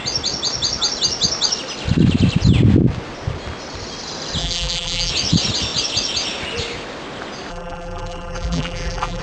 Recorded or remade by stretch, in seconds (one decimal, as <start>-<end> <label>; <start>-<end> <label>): 0.0-4.4 recorded; 4.4-5.1 remade; 5.1-7.5 recorded; 7.5-9.2 remade